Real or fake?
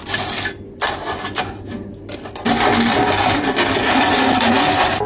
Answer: real